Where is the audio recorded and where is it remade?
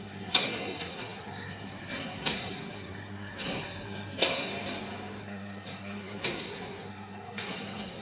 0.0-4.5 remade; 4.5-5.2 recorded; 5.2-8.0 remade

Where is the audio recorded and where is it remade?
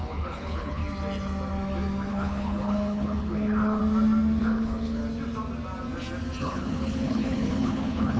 0.0-0.8 remade; 0.8-2.1 recorded; 2.1-3.8 remade; 3.8-4.4 recorded; 4.4-5.0 remade; 5.0-6.4 recorded; 6.4-8.2 remade